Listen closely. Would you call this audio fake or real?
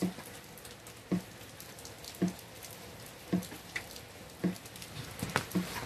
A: real